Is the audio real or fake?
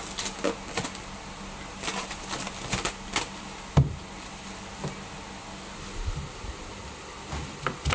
real